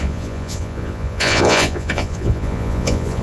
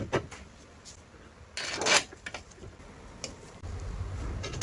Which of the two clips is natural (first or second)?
second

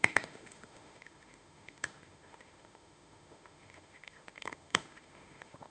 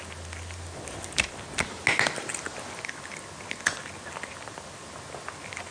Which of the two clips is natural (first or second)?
second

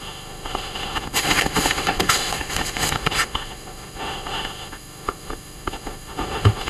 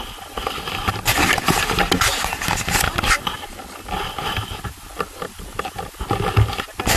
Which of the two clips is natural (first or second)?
second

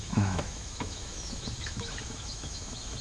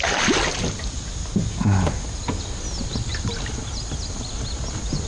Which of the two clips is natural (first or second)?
second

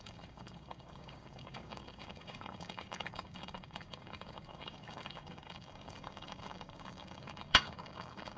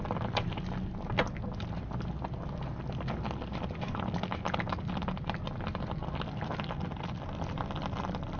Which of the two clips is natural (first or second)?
second